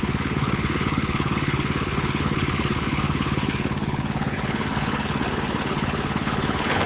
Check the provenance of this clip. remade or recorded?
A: remade